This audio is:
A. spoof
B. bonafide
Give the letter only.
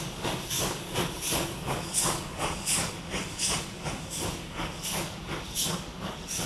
A